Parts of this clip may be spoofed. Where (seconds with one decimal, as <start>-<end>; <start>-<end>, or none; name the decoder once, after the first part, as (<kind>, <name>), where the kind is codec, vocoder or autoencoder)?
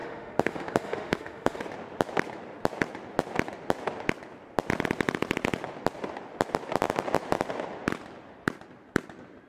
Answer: 0.0-1.6 (autoencoder, DAC-VAE)